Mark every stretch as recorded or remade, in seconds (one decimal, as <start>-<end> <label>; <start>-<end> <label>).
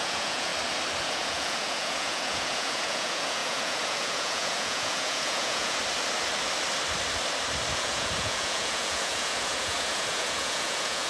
0.0-0.5 remade; 0.5-1.0 recorded; 1.0-5.8 remade; 5.8-7.7 recorded; 7.7-11.1 remade